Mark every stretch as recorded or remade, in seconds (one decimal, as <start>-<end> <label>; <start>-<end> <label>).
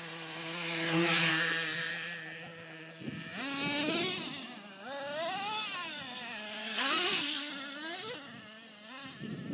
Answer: 0.0-1.3 recorded; 1.3-1.9 remade; 1.9-6.6 recorded; 6.6-7.5 remade; 7.5-9.5 recorded